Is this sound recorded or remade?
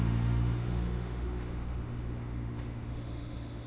remade